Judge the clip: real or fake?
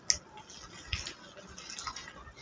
real